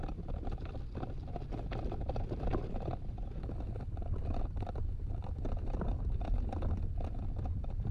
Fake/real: real